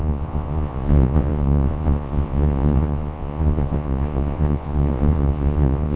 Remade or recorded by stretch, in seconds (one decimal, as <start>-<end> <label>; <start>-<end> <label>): 0.0-6.0 remade